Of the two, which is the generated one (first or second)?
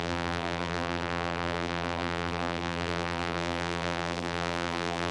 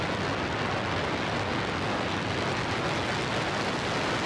first